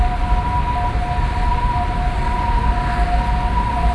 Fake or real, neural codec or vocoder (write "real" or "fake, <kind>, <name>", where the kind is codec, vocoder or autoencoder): real